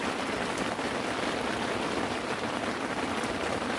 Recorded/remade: remade